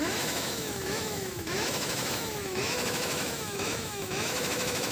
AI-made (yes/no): yes